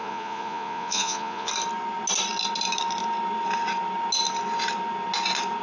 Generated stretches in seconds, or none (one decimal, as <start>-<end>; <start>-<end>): 0.0-1.5